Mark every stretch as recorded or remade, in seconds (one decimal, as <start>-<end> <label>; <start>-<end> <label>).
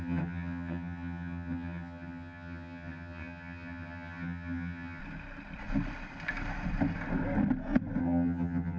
0.0-5.0 remade; 5.0-8.0 recorded; 8.0-8.8 remade